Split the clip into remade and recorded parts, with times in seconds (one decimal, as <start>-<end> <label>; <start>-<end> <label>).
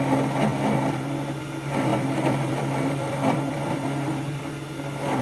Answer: 0.0-0.5 recorded; 0.5-1.4 remade; 1.4-1.9 recorded; 1.9-5.2 remade